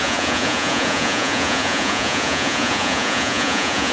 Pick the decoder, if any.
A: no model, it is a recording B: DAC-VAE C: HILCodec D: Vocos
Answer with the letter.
D